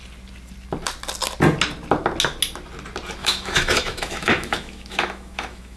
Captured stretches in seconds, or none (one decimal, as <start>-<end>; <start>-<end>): 0.0-3.2